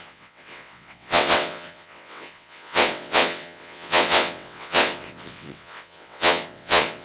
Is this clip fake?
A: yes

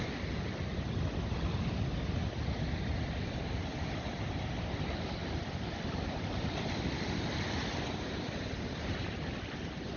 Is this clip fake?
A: no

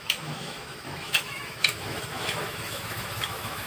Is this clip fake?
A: yes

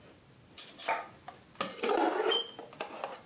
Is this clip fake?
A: no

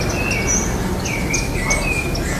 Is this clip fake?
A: no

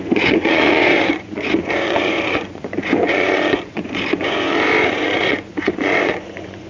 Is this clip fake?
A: yes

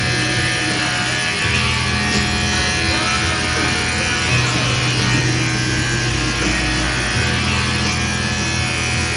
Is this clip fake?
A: yes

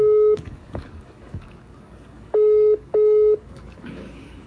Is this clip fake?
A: yes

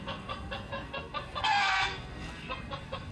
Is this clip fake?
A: yes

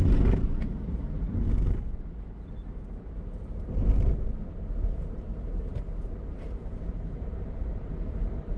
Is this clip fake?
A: no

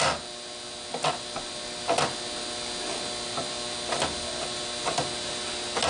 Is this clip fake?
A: no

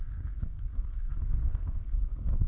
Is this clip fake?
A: yes